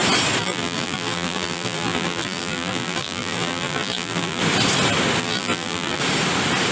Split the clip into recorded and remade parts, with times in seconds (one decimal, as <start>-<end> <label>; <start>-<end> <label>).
0.0-0.4 recorded; 0.4-4.4 remade; 4.4-5.2 recorded; 5.2-6.0 remade; 6.0-6.7 recorded